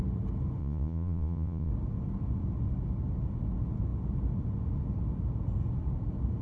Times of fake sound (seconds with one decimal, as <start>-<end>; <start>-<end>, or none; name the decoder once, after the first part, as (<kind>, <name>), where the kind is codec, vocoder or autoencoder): 0.6-1.7 (vocoder, Vocos)